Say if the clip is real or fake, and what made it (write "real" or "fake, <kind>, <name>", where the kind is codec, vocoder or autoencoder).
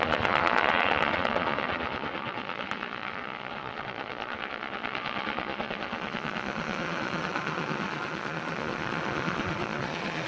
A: fake, vocoder, Vocos